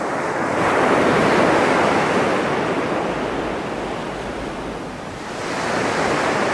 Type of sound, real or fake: real